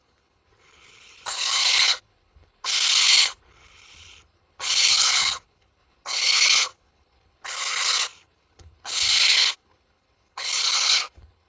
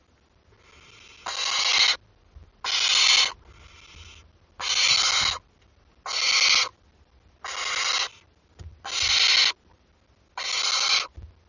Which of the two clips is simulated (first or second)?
first